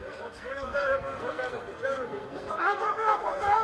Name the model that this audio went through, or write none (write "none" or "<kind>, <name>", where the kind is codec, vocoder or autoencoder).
codec, SNAC